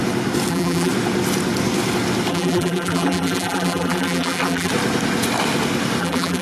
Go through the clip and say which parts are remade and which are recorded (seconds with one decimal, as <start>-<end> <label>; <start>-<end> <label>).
0.0-0.5 recorded; 0.5-0.9 remade; 0.9-2.3 recorded; 2.3-4.7 remade; 4.7-6.0 recorded; 6.0-6.4 remade